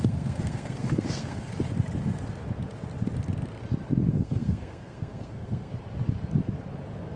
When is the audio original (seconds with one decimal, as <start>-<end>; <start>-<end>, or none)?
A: 1.5-4.1; 5.7-7.2